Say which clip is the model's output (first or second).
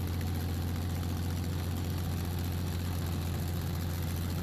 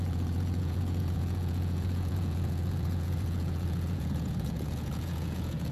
second